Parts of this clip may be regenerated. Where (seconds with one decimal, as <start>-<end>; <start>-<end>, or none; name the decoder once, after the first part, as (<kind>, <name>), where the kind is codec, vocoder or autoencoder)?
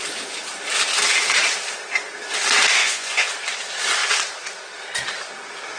2.8-3.3 (vocoder, Vocos)